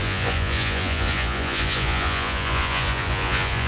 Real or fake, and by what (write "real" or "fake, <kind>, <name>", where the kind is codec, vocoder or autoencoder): fake, vocoder, Vocos